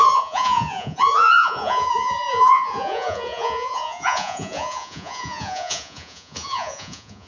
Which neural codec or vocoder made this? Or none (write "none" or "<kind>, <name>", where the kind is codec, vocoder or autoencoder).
vocoder, Vocos